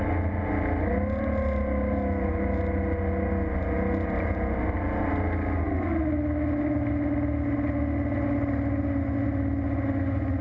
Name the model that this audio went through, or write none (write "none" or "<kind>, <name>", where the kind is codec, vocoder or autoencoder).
none